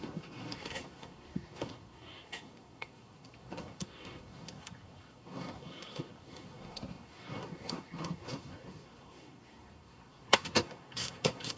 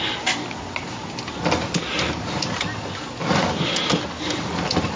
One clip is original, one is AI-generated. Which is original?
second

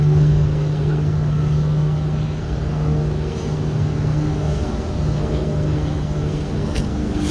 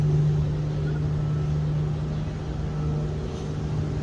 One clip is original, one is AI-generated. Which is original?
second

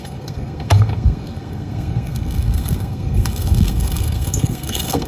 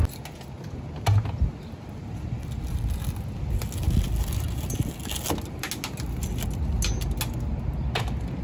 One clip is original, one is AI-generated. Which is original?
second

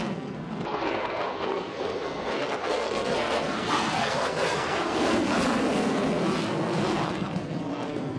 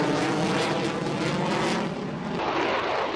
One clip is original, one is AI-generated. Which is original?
second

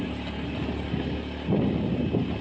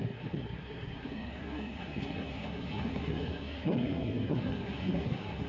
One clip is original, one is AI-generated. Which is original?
first